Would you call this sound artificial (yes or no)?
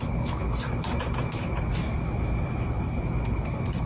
yes